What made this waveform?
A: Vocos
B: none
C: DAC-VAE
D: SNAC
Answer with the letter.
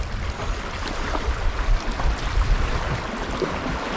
B